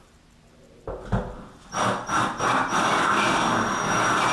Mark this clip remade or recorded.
recorded